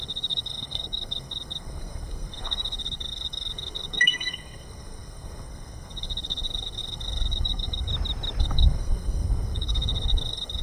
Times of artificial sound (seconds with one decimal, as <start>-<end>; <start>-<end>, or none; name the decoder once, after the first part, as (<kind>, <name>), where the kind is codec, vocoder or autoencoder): 0.0-7.9 (codec, SNAC); 8.4-10.6